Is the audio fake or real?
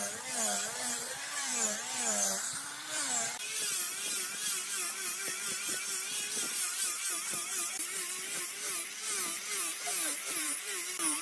fake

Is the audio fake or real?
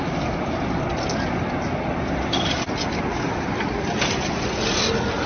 real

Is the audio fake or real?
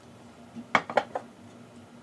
real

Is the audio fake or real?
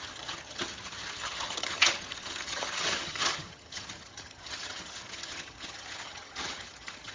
fake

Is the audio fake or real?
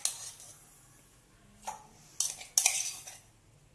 real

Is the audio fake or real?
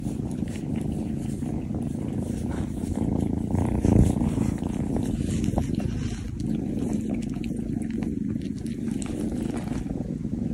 real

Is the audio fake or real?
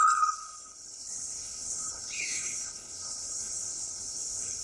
fake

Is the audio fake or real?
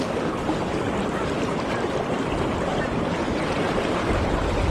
real